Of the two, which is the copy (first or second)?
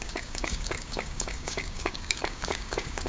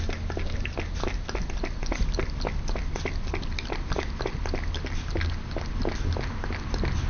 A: first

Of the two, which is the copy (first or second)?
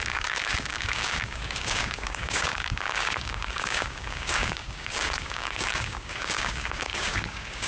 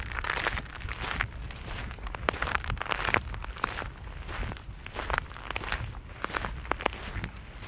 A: first